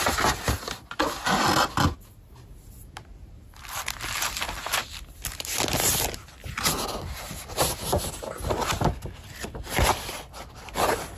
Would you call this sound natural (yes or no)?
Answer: yes